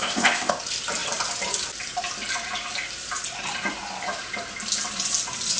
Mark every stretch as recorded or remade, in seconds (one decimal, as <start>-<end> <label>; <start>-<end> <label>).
0.0-0.6 remade; 0.6-5.6 recorded